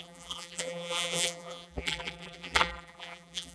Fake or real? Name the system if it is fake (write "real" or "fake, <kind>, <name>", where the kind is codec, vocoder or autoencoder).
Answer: fake, vocoder, BigVGAN v2